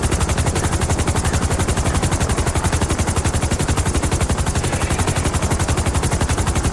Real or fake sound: real